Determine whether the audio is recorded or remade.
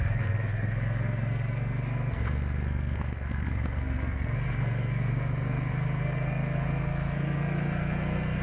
remade